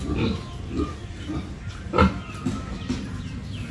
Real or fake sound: real